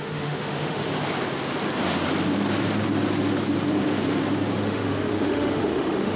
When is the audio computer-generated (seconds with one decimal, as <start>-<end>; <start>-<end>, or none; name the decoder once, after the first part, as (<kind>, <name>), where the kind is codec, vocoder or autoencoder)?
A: 0.0-0.9 (autoencoder, DAC-VAE); 4.6-6.2